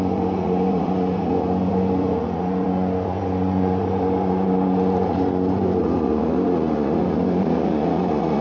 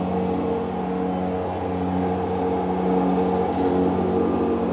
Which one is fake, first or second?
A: first